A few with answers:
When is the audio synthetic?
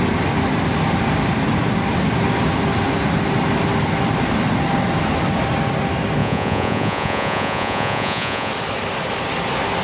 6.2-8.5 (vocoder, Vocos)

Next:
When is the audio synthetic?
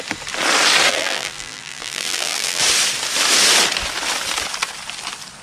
0.9-2.6 (vocoder, BigVGAN v2)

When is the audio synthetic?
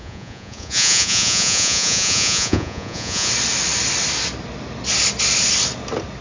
0.0-3.3 (vocoder, Vocos)